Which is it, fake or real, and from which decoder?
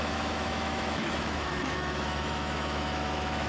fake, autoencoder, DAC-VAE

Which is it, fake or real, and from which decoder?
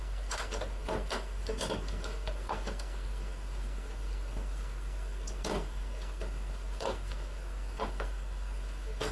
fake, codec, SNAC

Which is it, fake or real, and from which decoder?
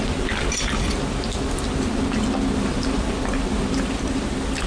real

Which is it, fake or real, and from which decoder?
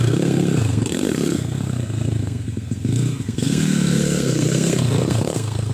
fake, codec, SNAC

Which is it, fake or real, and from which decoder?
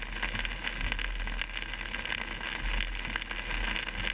real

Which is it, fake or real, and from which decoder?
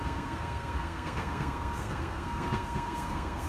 fake, codec, SNAC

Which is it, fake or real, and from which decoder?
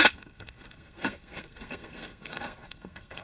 fake, codec, SNAC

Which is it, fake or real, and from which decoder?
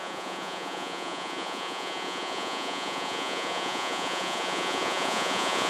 fake, vocoder, Vocos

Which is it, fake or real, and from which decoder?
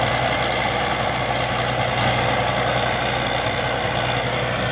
real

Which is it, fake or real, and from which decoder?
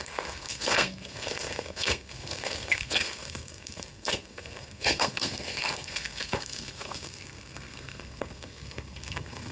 fake, codec, SNAC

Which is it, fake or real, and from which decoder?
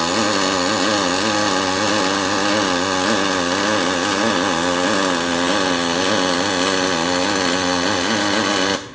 real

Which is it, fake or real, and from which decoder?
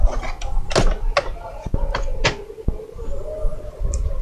real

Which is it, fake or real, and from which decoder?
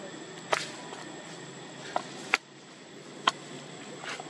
real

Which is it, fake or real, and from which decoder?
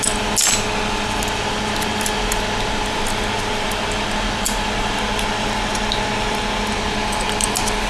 real